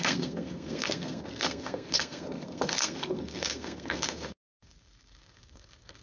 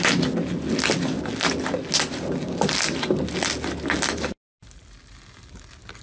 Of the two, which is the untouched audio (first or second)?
second